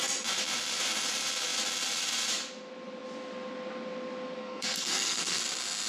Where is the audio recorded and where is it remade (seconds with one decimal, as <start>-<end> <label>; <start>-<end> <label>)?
0.0-4.4 recorded; 4.4-5.4 remade; 5.4-5.9 recorded